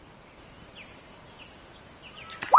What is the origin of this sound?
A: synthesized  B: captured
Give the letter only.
B